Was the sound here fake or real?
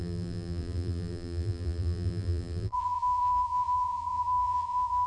fake